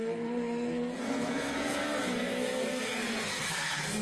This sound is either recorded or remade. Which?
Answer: remade